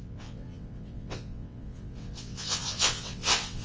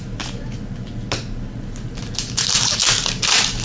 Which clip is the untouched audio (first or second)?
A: second